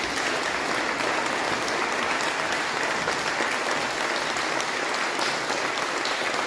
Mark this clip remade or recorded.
recorded